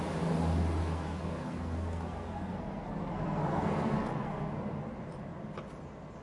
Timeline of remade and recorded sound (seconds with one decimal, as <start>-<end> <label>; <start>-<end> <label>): 0.0-0.8 recorded; 0.8-4.5 remade; 4.5-6.2 recorded